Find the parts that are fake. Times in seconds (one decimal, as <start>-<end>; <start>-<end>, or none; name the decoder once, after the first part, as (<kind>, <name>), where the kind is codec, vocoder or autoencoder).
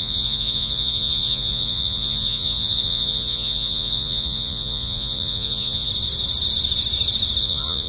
0.0-5.9 (vocoder, Vocos); 7.4-7.9